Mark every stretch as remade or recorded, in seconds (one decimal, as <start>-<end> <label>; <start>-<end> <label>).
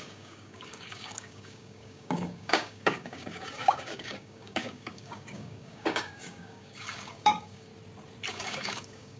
0.0-7.7 remade; 7.7-8.3 recorded; 8.3-9.2 remade